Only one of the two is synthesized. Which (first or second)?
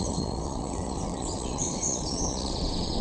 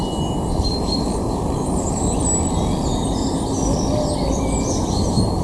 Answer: first